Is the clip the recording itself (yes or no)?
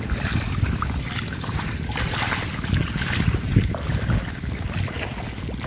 yes